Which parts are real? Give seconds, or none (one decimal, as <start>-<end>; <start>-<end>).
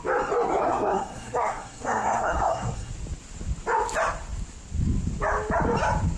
0.0-0.6; 2.9-6.2